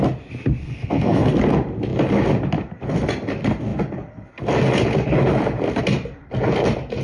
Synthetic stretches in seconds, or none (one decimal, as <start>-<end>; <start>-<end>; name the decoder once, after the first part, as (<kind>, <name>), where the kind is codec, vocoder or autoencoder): 0.6-1.3 (codec, SNAC)